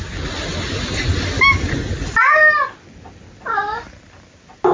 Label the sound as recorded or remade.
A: recorded